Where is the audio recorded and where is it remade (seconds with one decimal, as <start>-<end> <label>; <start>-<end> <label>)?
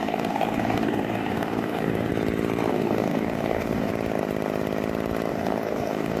0.0-2.1 remade; 2.1-2.7 recorded; 2.7-3.9 remade; 3.9-5.3 recorded; 5.3-6.2 remade